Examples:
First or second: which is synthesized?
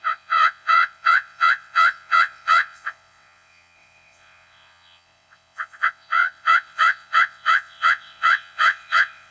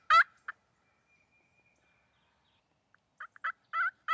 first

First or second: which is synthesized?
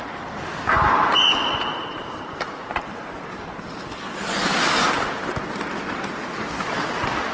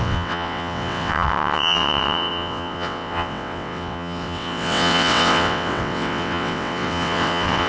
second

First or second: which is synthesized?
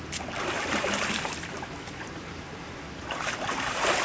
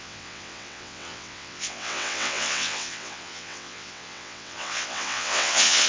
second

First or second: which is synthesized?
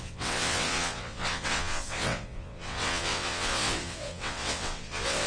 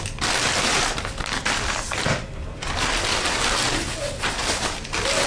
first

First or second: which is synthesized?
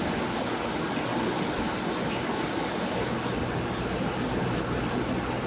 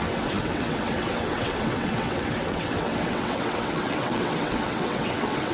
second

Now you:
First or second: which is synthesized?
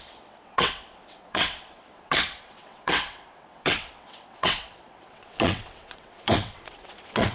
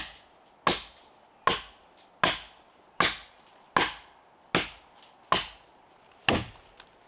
first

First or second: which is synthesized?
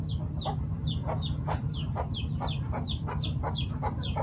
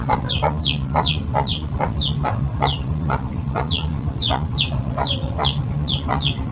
second